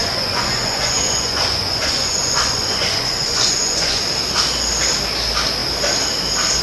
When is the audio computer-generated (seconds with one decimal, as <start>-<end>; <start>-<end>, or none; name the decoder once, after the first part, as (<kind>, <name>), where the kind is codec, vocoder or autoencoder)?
0.0-4.0 (vocoder, Vocos)